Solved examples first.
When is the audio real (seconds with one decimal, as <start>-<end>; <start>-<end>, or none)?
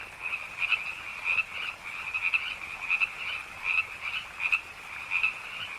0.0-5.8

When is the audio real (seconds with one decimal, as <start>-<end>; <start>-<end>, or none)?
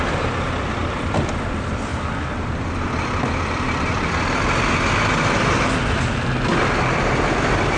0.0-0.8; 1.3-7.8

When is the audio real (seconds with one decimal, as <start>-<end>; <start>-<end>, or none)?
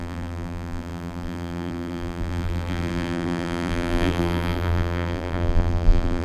none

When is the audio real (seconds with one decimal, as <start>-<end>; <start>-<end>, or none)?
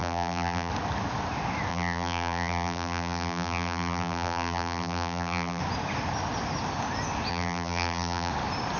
0.7-1.7; 5.6-7.3; 8.3-8.8